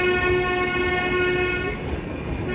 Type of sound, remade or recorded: recorded